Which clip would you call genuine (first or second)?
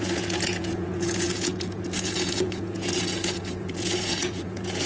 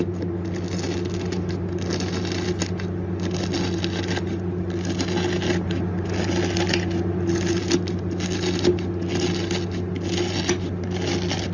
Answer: second